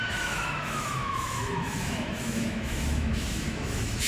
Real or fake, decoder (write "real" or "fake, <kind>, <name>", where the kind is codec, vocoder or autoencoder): fake, autoencoder, DAC-VAE